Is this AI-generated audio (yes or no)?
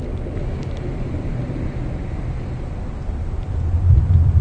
no